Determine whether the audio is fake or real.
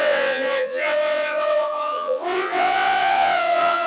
fake